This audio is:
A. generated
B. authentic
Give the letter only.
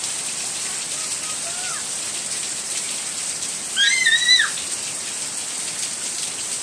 B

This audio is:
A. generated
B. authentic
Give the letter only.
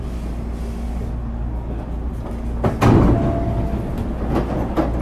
B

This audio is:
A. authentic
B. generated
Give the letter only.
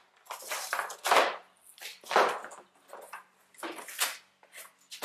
A